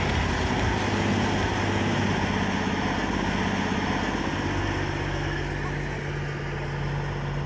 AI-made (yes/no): no